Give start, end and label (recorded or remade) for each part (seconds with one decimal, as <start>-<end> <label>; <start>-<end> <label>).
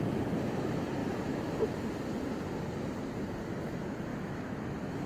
0.0-1.0 recorded; 1.0-1.6 remade; 1.6-4.1 recorded; 4.1-4.6 remade; 4.6-5.1 recorded